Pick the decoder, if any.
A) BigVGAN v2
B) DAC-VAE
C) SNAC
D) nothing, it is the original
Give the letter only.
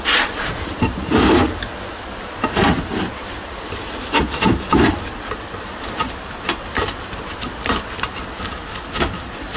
D